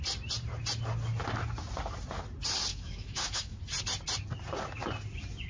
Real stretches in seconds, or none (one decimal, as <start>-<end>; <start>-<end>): 0.0-2.7; 3.6-5.5